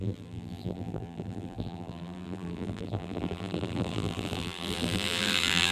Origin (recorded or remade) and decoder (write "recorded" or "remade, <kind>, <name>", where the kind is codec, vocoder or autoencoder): remade, vocoder, BigVGAN v2